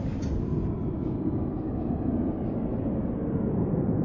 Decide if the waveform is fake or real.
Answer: real